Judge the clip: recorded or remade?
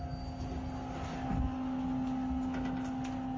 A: recorded